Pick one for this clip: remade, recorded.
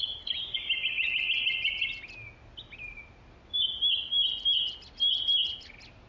recorded